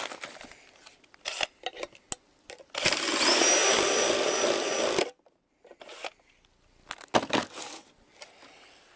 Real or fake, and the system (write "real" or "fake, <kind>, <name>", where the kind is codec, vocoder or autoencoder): real